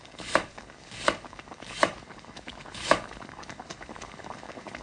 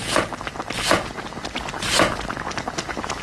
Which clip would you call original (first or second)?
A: second